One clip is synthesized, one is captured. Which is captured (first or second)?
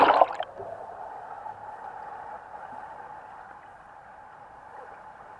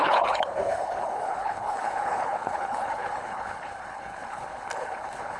first